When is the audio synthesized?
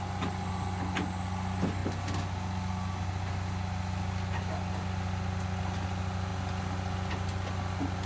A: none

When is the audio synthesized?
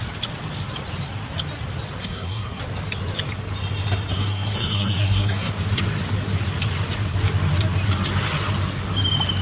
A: 2.0-2.6 (codec, SNAC); 4.1-5.5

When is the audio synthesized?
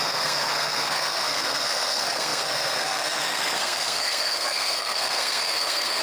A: 0.0-6.0 (codec, SNAC)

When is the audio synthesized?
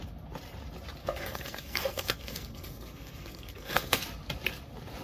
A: 1.0-4.0 (codec, SNAC)